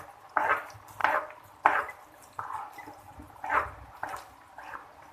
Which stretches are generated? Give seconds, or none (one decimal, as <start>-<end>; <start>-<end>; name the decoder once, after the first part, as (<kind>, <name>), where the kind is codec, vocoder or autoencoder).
1.0-4.1 (vocoder, BigVGAN v2)